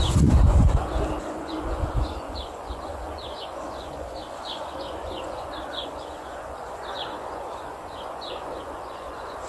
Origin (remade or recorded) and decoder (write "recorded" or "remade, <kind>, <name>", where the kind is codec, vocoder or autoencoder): remade, vocoder, Vocos